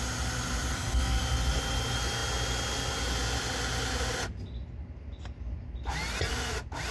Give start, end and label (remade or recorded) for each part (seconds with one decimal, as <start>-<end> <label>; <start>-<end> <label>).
0.0-0.7 recorded; 0.7-1.2 remade; 1.2-6.9 recorded